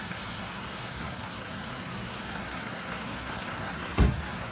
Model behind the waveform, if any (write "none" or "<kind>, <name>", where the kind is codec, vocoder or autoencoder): codec, SNAC